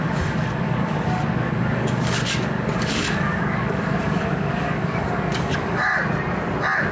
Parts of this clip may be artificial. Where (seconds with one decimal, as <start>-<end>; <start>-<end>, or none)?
0.0-5.9